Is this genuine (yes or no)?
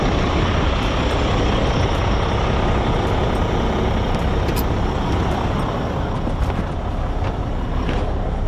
yes